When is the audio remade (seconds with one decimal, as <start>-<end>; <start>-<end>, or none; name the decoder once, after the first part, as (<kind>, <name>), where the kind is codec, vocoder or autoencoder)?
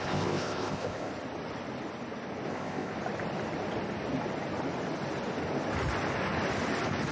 0.0-1.1 (codec, ZipCodec); 2.5-2.9